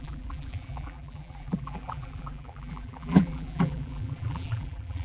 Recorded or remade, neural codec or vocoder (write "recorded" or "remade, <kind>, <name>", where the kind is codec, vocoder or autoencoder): remade, vocoder, BigVGAN v2